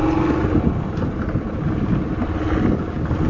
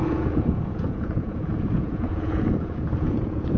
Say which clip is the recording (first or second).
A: first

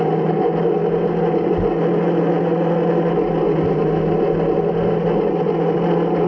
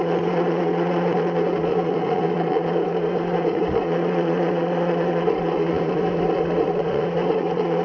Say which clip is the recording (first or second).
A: first